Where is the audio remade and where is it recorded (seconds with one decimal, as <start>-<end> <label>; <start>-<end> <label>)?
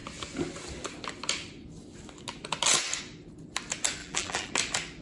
0.0-4.0 recorded; 4.0-4.5 remade; 4.5-5.0 recorded